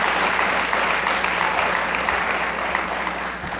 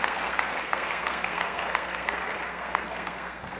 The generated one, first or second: second